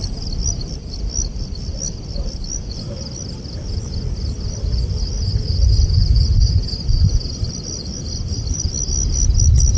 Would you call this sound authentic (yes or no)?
yes